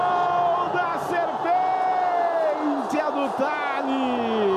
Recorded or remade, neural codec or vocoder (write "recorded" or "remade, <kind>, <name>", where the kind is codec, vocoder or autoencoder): recorded